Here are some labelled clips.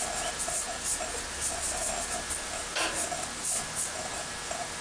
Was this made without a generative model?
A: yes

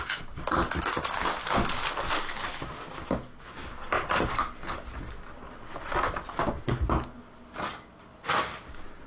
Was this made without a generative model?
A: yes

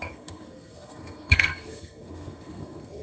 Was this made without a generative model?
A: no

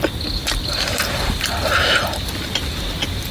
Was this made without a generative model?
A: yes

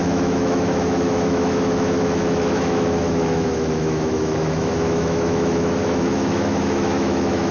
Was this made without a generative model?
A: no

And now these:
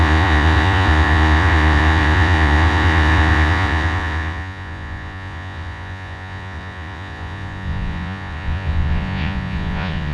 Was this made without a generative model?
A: no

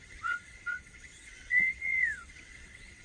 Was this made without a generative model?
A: no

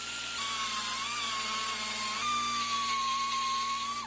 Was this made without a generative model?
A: no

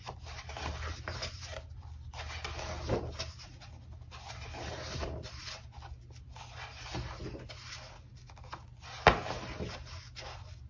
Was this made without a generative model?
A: yes